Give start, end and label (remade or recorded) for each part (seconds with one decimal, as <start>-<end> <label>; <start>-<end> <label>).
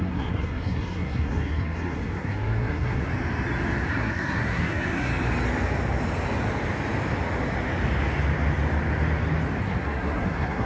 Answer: 0.0-3.1 remade; 3.1-3.9 recorded; 3.9-5.1 remade; 5.1-9.6 recorded; 9.6-10.7 remade